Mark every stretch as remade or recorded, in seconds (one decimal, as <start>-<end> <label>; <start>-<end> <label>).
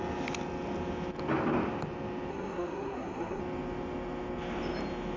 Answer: 0.0-2.3 recorded; 2.3-3.4 remade; 3.4-5.2 recorded